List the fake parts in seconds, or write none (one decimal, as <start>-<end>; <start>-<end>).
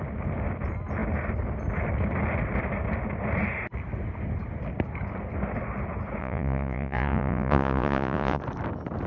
6.2-8.4